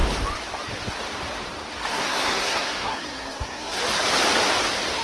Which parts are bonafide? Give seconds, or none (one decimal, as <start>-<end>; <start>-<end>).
0.0-1.9; 3.8-5.0